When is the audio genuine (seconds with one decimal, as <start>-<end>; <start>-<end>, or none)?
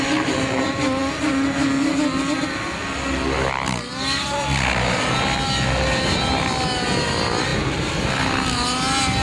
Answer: 0.0-9.2